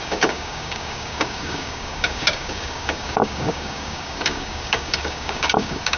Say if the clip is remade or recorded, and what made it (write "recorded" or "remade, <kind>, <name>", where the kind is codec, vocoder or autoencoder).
remade, codec, DAC